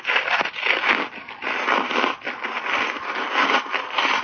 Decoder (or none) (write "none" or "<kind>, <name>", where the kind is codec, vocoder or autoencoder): none